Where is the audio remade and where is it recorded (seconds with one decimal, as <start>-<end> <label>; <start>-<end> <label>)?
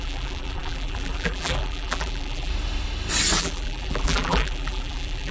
0.0-2.5 remade; 2.5-3.4 recorded; 3.4-5.3 remade